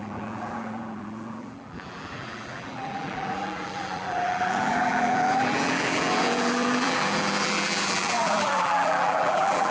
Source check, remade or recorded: remade